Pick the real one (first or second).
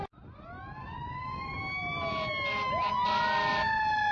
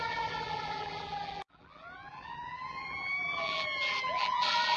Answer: first